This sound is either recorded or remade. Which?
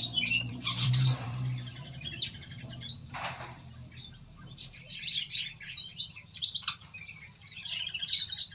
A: remade